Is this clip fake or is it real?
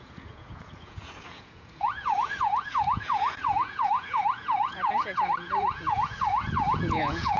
fake